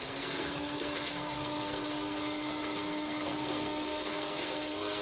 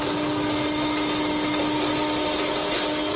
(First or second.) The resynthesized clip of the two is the first